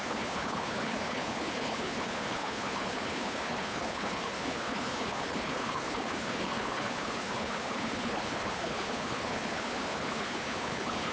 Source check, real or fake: fake